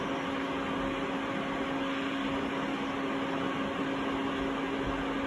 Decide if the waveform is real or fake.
real